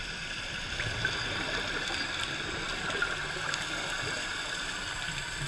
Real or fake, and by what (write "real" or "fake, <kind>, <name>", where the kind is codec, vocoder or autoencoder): fake, vocoder, BigVGAN v2